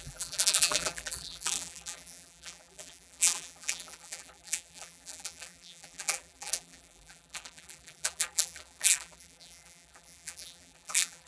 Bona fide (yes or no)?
no